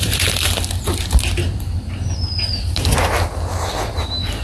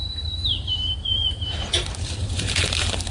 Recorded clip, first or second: first